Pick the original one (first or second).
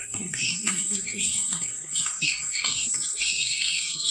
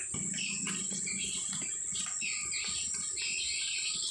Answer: second